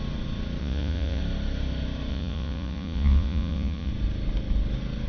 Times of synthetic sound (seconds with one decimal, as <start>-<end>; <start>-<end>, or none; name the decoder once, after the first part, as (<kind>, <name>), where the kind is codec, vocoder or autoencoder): 0.6-1.2 (vocoder, Vocos); 2.1-3.9